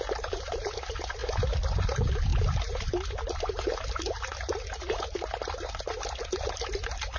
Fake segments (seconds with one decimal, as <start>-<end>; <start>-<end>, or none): none

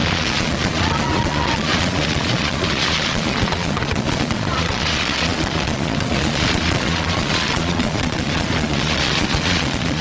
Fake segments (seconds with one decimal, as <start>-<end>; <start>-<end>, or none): 0.0-10.0